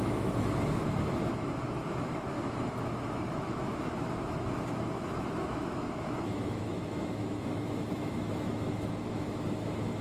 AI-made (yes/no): yes